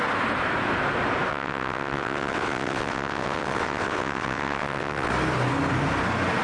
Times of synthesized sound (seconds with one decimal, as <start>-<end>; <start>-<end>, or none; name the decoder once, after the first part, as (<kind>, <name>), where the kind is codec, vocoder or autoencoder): 1.3-5.1 (vocoder, WaveNeXt)